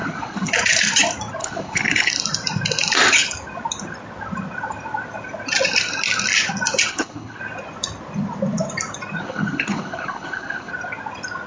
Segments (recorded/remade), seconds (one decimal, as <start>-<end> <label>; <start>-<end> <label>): 0.0-0.5 remade; 0.5-1.4 recorded; 1.4-2.1 remade; 2.1-6.9 recorded; 6.9-7.4 remade; 7.4-9.2 recorded; 9.2-10.7 remade; 10.7-11.5 recorded